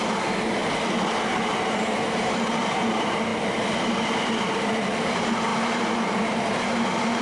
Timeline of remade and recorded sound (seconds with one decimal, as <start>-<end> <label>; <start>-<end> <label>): 0.0-0.6 remade; 0.6-1.1 recorded; 1.1-3.3 remade; 3.3-3.9 recorded; 3.9-7.2 remade